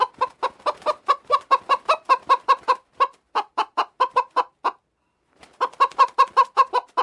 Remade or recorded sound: recorded